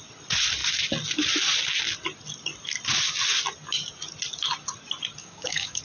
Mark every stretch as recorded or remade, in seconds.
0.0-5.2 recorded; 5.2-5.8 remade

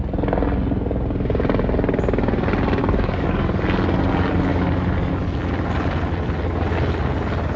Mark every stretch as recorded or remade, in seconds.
0.0-2.8 recorded; 2.8-3.6 remade; 3.6-4.5 recorded; 4.5-5.2 remade; 5.2-7.6 recorded

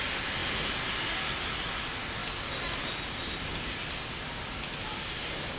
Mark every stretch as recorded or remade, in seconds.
0.0-5.6 recorded

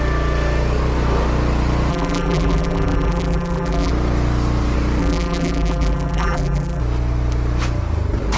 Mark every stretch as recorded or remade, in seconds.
0.0-1.9 recorded; 1.9-3.9 remade; 3.9-5.0 recorded; 5.0-6.8 remade; 6.8-8.4 recorded

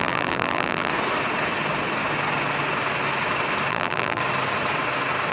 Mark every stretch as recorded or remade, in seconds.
0.0-0.9 remade; 0.9-3.7 recorded; 3.7-4.2 remade; 4.2-5.3 recorded

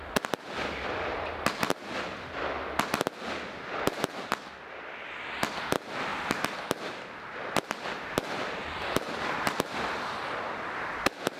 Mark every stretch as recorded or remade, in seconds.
0.0-11.4 recorded

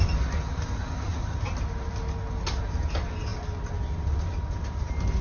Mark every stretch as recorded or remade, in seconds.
0.0-5.2 recorded

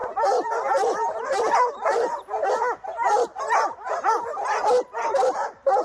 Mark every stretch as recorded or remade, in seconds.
0.0-2.5 remade; 2.5-3.3 recorded; 3.3-5.8 remade